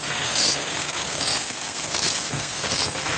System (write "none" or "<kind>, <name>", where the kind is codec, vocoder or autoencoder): codec, SNAC